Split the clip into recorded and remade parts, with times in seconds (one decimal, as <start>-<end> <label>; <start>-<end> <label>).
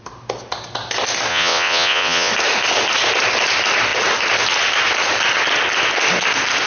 0.0-1.3 recorded; 1.3-2.3 remade; 2.3-6.7 recorded